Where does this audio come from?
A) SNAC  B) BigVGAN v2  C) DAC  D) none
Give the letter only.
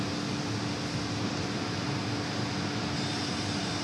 D